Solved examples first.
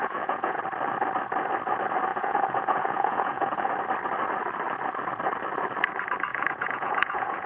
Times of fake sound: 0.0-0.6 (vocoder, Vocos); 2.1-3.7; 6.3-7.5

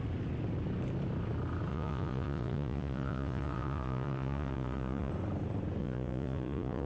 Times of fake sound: 1.7-5.1 (vocoder, Vocos); 5.8-6.9

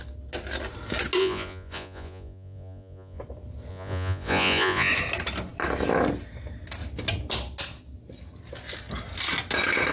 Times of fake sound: 1.2-3.2 (vocoder, Vocos); 3.7-4.9

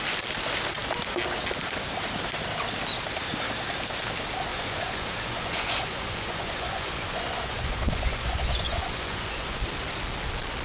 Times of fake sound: 4.5-9.6 (vocoder, Vocos)

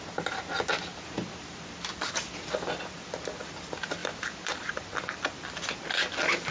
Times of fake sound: 0.9-2.2 (vocoder, BigVGAN v2); 4.0-5.2

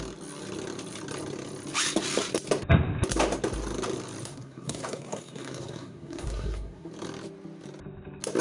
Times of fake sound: 4.2-6.9 (codec, SNAC)